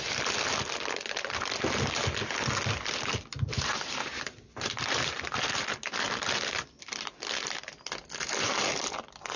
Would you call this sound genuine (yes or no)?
yes